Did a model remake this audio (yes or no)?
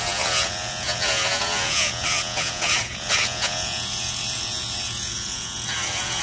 yes